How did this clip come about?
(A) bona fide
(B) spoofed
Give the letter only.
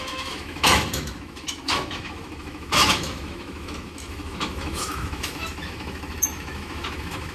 B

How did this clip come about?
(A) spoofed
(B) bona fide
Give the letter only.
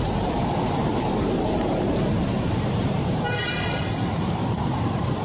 A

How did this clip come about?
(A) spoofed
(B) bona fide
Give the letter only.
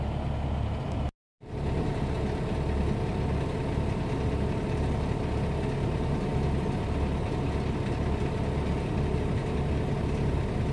B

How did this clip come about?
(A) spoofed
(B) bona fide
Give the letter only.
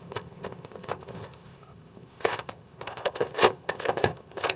A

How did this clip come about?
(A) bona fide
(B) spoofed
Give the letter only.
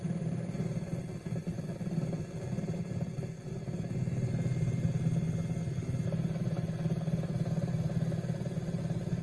A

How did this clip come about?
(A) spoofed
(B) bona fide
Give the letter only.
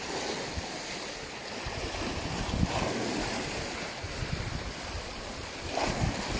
B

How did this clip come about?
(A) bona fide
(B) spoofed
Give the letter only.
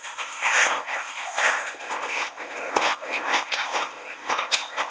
B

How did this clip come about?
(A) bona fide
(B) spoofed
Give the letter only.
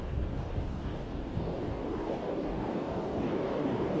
B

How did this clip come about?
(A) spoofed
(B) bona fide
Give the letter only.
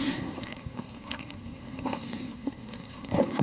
A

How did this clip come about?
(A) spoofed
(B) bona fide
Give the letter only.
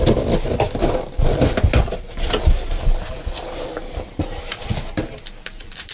B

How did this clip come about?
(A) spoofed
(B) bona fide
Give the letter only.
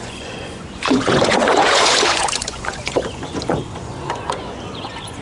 A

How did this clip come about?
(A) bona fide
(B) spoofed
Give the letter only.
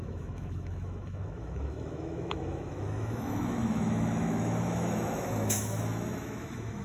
B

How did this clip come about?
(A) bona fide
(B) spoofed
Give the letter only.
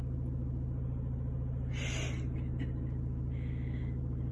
A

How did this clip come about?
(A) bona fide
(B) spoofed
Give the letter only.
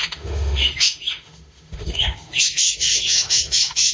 B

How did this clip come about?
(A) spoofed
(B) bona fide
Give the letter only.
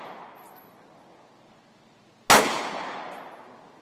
B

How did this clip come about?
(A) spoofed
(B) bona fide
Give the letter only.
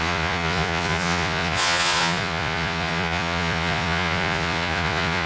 A